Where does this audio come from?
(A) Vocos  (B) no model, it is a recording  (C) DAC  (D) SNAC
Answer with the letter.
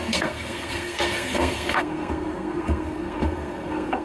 D